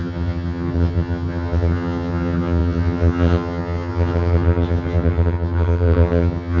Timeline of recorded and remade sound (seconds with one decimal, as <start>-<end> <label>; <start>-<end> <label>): 0.0-6.6 remade